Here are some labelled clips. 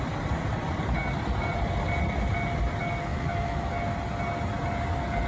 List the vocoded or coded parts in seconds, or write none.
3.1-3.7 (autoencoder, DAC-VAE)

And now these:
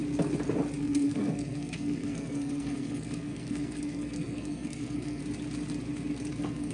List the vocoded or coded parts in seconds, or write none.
0.8-5.2 (codec, SNAC); 6.3-6.7

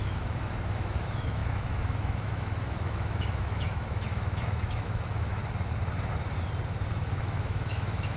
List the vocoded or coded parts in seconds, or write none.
0.0-5.4 (autoencoder, DAC-VAE); 6.9-8.2